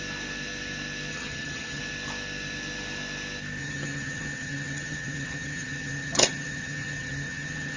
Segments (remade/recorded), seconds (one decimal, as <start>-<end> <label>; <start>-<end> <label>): 0.0-1.1 recorded; 1.1-1.8 remade; 1.8-3.6 recorded; 3.6-7.8 remade